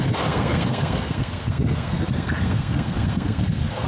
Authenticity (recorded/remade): remade